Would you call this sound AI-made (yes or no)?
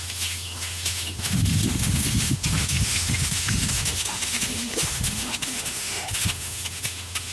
yes